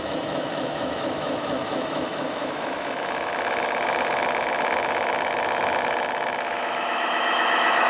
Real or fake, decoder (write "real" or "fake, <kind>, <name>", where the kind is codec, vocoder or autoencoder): fake, autoencoder, DAC-VAE